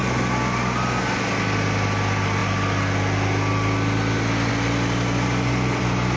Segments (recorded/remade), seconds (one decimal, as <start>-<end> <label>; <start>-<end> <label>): 0.0-6.2 recorded